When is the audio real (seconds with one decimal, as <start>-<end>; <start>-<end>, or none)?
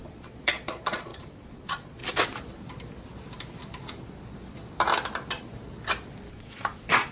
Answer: 2.0-6.3